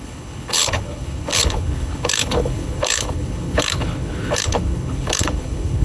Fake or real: fake